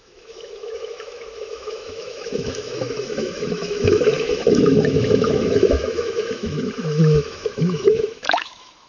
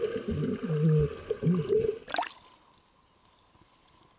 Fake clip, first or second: first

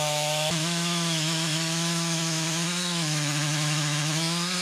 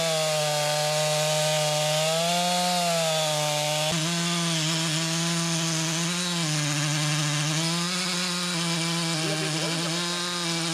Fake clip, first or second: first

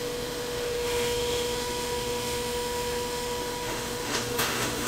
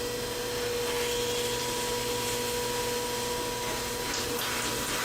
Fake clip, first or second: first